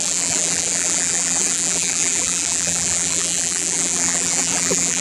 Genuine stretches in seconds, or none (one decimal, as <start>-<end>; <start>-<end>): none